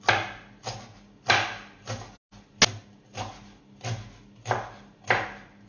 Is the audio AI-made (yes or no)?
no